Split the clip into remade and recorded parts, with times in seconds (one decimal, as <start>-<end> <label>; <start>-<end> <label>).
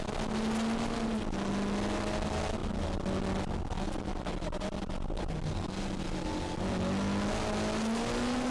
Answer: 0.0-8.5 recorded